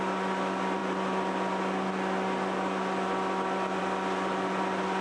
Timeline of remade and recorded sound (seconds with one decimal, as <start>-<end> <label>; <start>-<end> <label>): 0.0-5.0 recorded